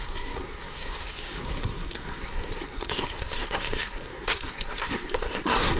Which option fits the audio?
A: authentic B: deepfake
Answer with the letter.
B